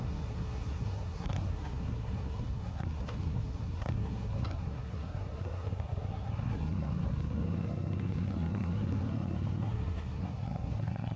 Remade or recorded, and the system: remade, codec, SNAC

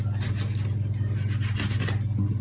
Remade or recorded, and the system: recorded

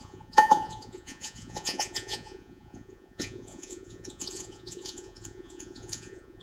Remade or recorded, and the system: remade, vocoder, Vocos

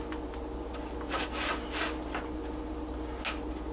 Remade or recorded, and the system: recorded